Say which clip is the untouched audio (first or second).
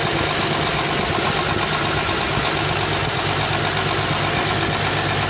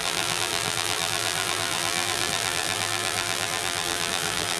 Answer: first